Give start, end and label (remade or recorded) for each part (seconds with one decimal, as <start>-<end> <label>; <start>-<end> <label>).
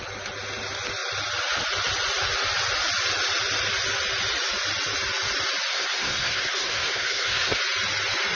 0.0-5.7 recorded; 5.7-7.6 remade; 7.6-8.4 recorded